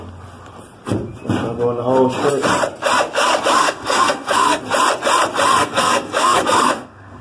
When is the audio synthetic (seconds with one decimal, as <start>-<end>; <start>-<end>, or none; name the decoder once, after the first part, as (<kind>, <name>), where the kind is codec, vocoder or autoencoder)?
3.6-4.6 (codec, SNAC); 5.6-7.2